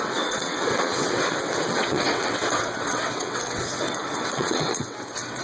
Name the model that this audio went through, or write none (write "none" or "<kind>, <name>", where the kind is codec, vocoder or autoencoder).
vocoder, WaveNeXt